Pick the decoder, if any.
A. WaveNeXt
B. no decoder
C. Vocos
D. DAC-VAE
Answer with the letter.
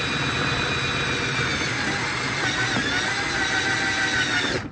B